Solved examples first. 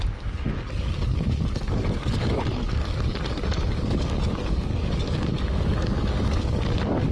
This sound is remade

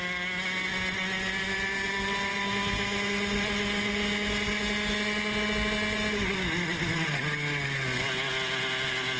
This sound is recorded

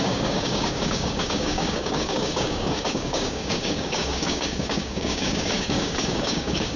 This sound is remade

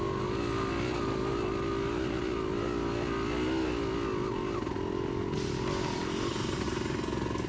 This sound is recorded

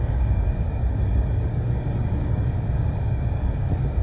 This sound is remade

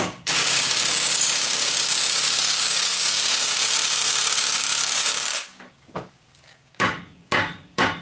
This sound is remade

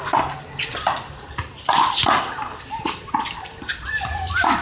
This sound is recorded